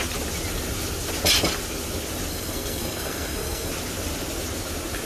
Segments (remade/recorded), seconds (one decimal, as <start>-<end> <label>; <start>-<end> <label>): 0.0-2.3 recorded; 2.3-3.7 remade; 3.7-5.0 recorded